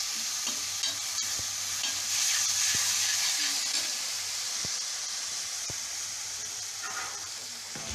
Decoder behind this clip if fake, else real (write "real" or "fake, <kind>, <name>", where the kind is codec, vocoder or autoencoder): fake, vocoder, BigVGAN v2